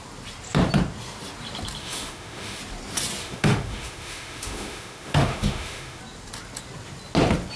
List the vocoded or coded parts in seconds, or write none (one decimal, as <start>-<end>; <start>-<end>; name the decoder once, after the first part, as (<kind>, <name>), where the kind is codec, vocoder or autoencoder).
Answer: 1.8-2.6 (autoencoder, DAC-VAE); 3.2-6.0